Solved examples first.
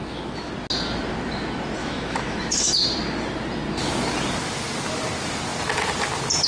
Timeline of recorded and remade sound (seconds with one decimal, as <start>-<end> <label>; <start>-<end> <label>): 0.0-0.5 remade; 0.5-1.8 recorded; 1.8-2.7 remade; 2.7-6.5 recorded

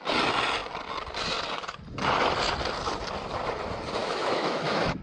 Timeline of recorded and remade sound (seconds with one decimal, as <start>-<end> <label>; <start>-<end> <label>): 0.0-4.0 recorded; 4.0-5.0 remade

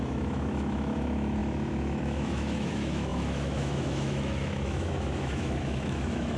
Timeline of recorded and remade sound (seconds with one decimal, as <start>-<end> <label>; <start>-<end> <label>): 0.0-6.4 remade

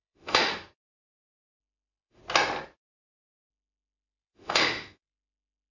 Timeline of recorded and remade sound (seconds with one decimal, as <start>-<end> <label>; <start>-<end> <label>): 0.0-0.5 remade; 0.5-1.6 recorded; 1.6-2.2 remade; 2.2-3.5 recorded; 3.5-5.7 remade

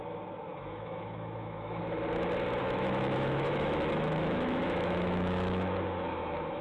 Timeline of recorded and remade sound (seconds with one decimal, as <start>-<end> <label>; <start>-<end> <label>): 0.0-0.5 recorded; 0.5-1.8 remade; 1.8-2.6 recorded; 2.6-6.6 remade

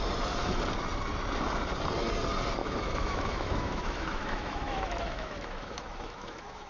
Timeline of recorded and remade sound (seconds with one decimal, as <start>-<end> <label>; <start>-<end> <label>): 0.0-2.6 recorded; 2.6-6.7 remade